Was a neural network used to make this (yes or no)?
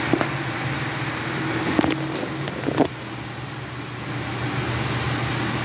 no